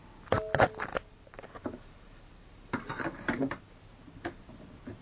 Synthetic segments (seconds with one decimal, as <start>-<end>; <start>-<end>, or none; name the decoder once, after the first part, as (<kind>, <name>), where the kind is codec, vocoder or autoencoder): 0.9-3.6 (vocoder, BigVGAN v2)